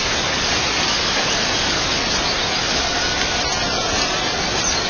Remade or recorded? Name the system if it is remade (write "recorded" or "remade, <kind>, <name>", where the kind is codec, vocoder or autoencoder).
recorded